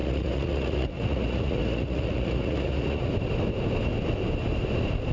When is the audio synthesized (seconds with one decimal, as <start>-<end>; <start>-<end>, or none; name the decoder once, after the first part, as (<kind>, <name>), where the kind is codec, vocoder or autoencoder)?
0.0-3.1 (vocoder, Vocos)